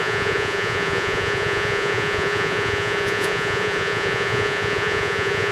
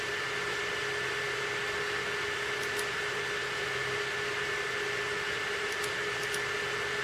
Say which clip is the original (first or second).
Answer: second